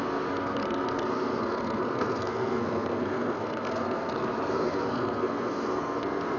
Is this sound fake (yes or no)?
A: yes